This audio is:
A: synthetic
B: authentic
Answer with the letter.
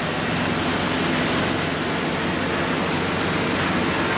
B